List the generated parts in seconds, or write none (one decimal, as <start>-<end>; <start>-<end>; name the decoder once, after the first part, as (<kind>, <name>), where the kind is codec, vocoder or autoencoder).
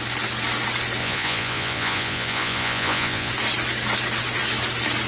1.0-3.3 (vocoder, Vocos)